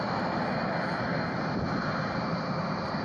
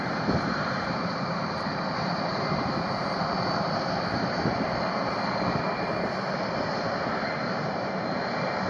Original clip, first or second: first